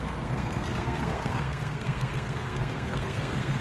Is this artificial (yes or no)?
yes